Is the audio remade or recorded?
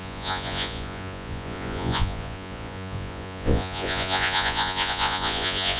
remade